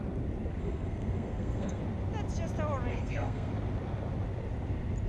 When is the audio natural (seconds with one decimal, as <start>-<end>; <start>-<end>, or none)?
0.0-0.6; 1.8-2.9; 3.5-5.1